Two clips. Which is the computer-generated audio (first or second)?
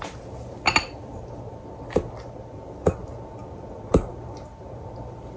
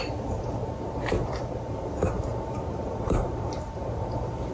second